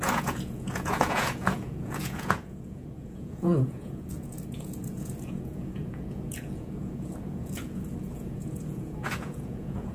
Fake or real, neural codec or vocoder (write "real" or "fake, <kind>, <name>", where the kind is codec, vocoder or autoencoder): fake, vocoder, Vocos